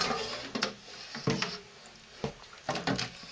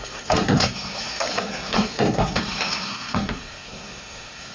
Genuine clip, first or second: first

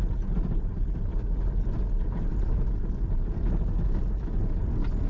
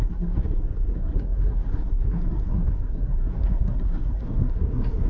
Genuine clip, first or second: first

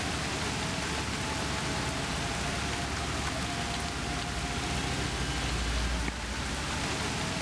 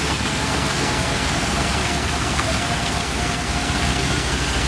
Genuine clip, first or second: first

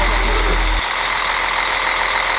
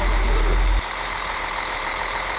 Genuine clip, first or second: first